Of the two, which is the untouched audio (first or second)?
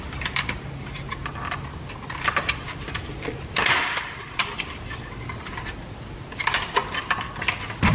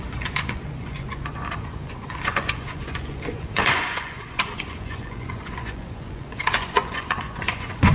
first